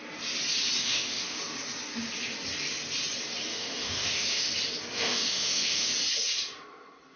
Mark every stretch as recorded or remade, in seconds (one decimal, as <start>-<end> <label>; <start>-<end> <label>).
0.0-0.8 recorded; 0.8-1.4 remade; 1.4-3.5 recorded; 3.5-4.5 remade; 4.5-4.9 recorded; 4.9-5.9 remade; 5.9-7.2 recorded